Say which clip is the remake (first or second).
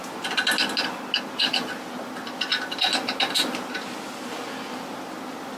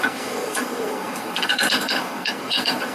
second